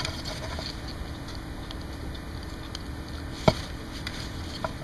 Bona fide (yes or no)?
yes